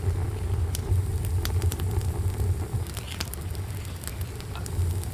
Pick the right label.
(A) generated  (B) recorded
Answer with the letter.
B